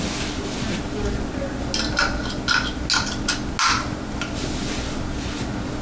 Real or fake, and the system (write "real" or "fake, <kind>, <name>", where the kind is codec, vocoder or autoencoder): real